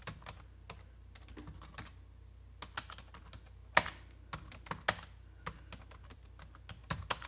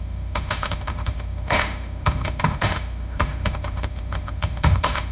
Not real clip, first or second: second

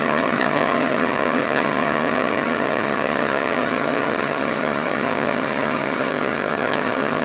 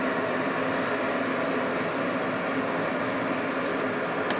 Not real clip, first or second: first